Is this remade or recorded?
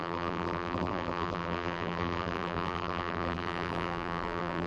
remade